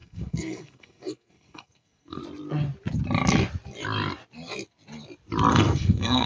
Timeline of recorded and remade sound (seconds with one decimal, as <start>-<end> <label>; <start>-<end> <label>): 0.0-2.2 remade; 2.2-5.5 recorded; 5.5-6.3 remade